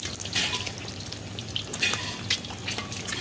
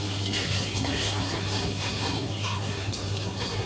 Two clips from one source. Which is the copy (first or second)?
second